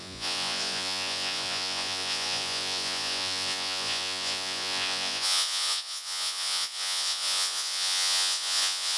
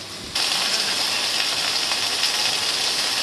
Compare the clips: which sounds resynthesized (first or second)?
first